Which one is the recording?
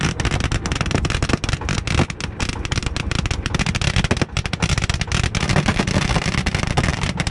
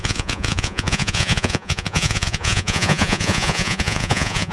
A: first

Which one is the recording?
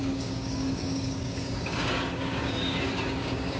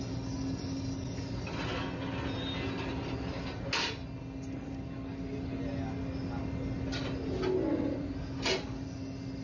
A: second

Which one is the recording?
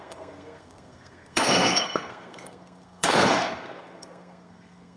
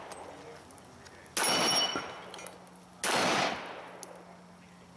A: second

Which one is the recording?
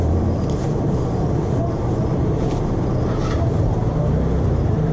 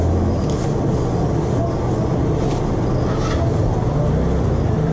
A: second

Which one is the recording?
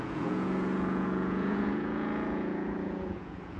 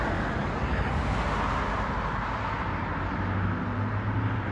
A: second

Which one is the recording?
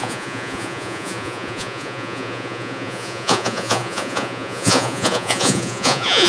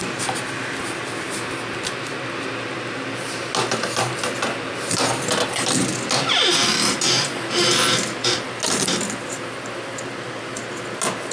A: second